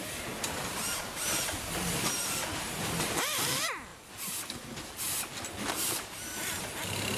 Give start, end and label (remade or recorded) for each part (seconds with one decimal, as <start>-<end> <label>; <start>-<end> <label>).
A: 0.0-7.2 recorded